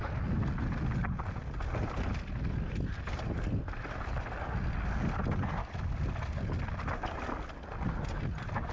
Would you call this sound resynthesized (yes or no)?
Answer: no